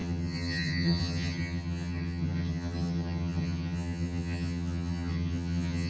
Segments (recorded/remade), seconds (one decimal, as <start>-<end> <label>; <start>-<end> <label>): 0.0-5.9 remade